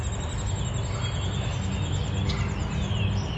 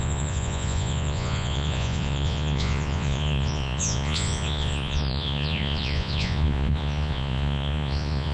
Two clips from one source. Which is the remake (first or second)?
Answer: second